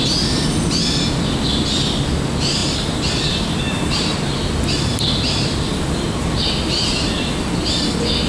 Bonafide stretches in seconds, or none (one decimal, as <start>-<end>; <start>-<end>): 0.0-8.3